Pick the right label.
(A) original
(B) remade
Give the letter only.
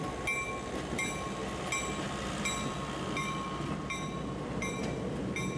A